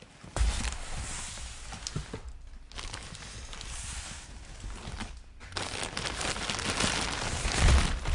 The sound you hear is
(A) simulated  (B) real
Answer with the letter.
B